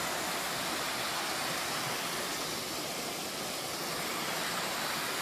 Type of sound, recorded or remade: recorded